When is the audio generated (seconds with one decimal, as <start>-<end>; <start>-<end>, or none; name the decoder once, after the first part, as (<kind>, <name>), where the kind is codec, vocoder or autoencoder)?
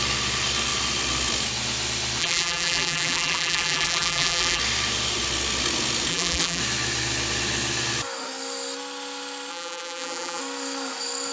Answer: 2.2-4.6 (vocoder, BigVGAN v2); 6.1-6.6; 9.5-10.4